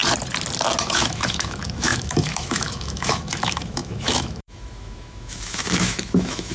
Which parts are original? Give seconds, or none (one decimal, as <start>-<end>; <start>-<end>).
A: 0.0-0.8